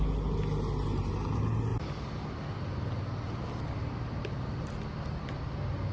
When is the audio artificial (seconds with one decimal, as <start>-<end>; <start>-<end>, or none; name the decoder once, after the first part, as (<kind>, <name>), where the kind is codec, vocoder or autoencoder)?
none